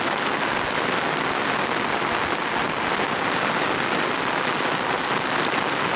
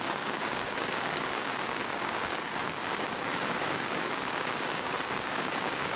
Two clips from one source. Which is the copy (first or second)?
second